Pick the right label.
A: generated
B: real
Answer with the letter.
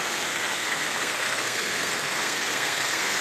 A